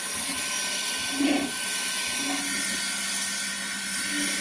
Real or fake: real